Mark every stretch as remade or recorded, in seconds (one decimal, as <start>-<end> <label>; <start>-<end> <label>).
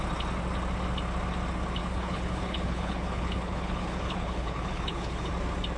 0.0-1.8 recorded; 1.8-5.3 remade; 5.3-5.8 recorded